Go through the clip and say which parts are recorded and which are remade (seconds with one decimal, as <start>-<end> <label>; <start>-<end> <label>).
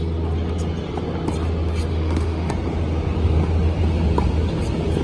0.0-1.9 recorded; 1.9-2.5 remade; 2.5-5.0 recorded